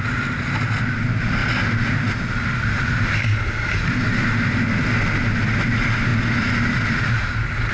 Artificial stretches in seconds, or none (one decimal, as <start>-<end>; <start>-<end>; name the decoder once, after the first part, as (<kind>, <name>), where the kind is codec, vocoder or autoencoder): none